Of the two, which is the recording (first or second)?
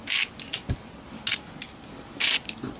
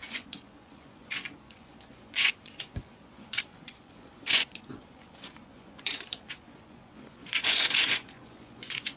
first